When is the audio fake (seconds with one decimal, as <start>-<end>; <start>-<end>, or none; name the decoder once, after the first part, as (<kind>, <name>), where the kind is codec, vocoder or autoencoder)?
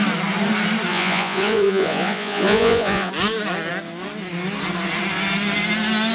0.9-3.1 (vocoder, Vocos)